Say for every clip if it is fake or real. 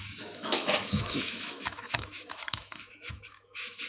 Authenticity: fake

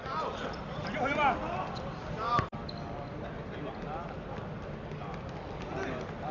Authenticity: real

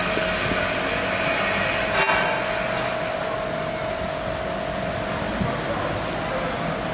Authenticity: real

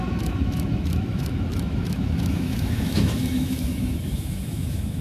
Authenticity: fake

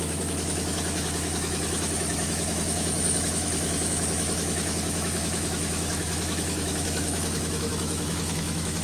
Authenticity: fake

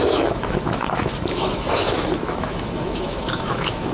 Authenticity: fake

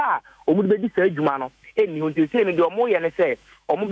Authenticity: fake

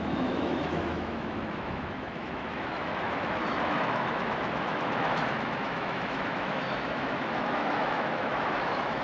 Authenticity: fake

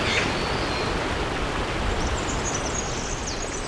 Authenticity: real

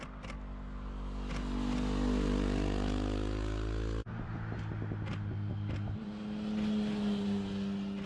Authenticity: real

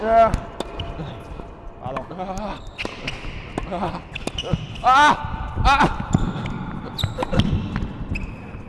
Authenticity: real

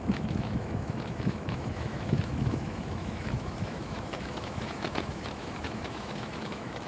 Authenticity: fake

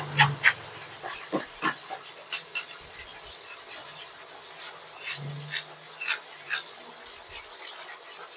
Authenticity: real